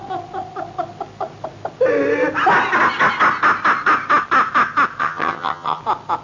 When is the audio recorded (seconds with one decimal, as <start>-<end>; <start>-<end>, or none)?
0.0-5.0; 5.8-6.2